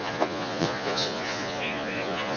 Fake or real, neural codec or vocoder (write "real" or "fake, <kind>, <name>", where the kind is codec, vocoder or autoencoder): fake, vocoder, Vocos